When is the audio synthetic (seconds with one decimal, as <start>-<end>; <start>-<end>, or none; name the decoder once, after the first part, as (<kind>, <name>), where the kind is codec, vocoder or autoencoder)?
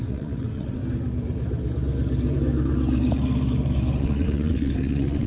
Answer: 0.0-0.8 (vocoder, WaveNeXt); 4.0-5.3